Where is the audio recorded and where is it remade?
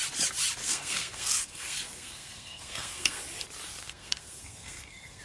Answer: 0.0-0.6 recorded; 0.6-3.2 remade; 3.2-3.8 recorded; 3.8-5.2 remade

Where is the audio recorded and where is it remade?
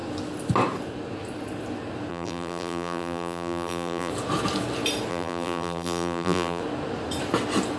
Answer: 0.0-2.1 recorded; 2.1-4.1 remade; 4.1-5.1 recorded; 5.1-6.6 remade; 6.6-7.8 recorded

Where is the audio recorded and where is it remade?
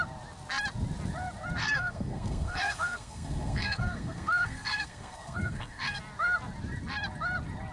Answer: 0.0-1.6 recorded; 1.6-6.0 remade; 6.0-7.7 recorded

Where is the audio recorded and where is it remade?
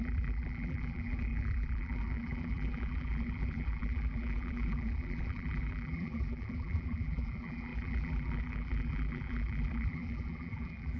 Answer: 0.0-11.0 remade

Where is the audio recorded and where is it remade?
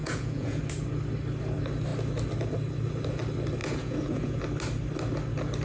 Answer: 0.0-0.6 remade; 0.6-3.6 recorded; 3.6-4.4 remade; 4.4-5.6 recorded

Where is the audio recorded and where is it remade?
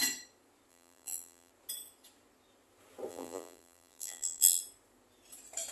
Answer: 0.0-0.7 recorded; 0.7-1.5 remade; 1.5-3.1 recorded; 3.1-4.6 remade; 4.6-5.7 recorded